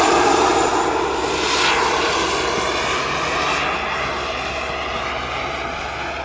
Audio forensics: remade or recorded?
recorded